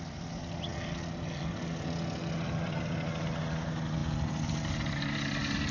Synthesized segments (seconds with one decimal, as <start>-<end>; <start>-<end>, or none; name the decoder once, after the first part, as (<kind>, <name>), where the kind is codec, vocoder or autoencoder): none